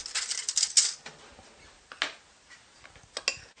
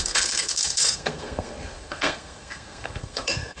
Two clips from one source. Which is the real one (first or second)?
first